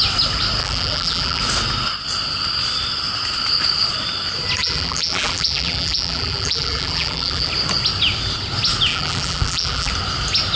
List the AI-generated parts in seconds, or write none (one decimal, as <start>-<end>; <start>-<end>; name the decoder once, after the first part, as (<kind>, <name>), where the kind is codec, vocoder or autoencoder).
0.6-1.4 (vocoder, BigVGAN v2); 4.6-7.5; 8.9-9.9